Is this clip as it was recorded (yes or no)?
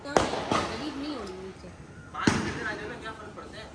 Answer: yes